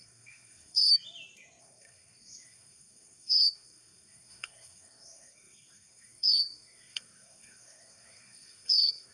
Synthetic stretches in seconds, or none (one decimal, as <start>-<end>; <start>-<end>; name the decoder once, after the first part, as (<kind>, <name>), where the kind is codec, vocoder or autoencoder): 0.0-0.9 (codec, SNAC); 1.6-9.1

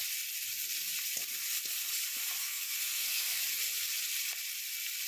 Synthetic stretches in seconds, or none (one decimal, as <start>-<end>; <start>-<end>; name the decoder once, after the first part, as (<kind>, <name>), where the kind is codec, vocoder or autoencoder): 2.4-3.4 (codec, SNAC)

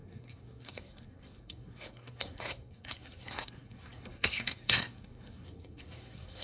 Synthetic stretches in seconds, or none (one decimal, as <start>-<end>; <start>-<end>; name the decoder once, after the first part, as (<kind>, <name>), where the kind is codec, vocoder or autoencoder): 0.0-6.4 (codec, SNAC)

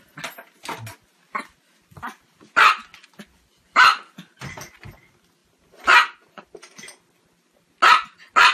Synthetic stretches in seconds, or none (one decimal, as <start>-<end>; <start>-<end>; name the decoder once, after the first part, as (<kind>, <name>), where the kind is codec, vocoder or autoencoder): none